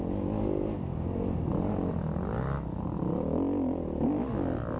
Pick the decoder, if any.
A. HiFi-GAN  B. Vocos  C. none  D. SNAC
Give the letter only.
C